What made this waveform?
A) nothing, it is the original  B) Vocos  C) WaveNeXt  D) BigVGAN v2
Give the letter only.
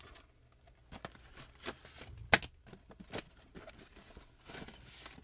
A